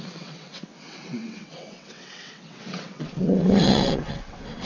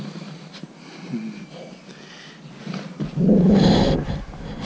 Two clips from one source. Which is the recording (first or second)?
second